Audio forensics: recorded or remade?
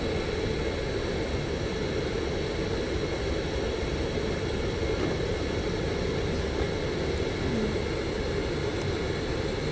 recorded